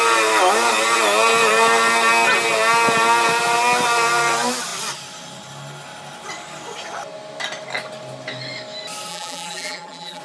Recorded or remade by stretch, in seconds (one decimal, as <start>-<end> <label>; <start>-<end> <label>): 0.0-9.1 recorded; 9.1-10.2 remade